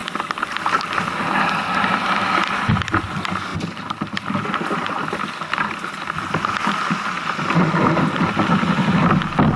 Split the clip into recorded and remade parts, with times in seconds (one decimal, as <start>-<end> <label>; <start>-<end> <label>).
0.0-9.6 recorded